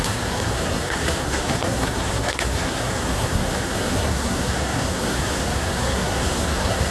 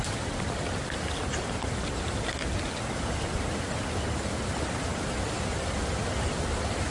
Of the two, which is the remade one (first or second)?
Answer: first